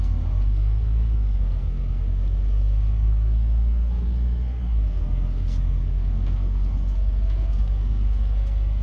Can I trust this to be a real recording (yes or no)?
no